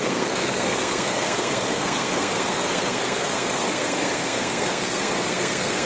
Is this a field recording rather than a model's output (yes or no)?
no